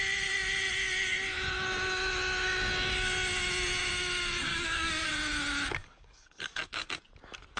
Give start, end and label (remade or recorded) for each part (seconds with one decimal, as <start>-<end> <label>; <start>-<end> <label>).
0.0-4.5 recorded; 4.5-5.1 remade; 5.1-5.8 recorded; 5.8-6.8 remade; 6.8-7.6 recorded